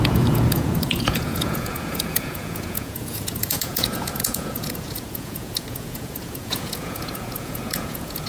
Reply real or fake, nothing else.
fake